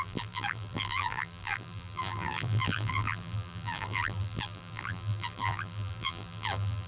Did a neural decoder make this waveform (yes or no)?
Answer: yes